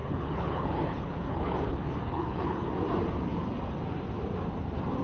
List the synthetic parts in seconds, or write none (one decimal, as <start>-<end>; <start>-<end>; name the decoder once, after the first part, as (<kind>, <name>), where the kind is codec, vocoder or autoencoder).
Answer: 0.0-2.7 (codec, HILCodec)